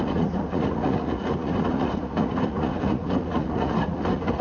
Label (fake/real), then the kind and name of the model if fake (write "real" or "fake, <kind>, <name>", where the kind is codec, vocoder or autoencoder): fake, vocoder, Vocos